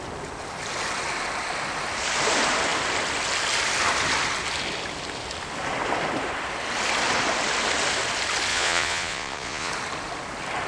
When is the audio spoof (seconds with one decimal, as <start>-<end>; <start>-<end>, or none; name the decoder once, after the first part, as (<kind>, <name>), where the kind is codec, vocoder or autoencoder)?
8.5-9.7 (vocoder, Vocos)